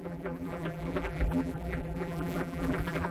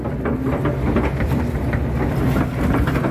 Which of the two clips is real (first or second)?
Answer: second